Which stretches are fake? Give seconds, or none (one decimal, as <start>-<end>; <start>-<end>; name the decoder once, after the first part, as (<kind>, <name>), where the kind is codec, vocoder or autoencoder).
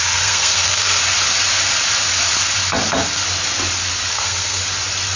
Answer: 0.0-1.0 (codec, SNAC); 4.1-4.6